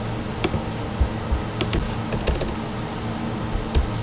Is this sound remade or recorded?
recorded